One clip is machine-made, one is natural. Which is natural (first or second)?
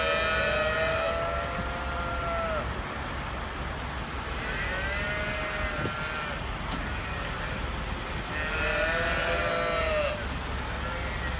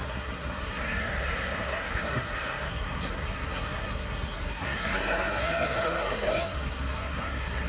first